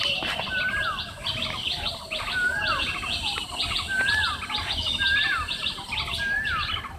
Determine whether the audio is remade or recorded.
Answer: recorded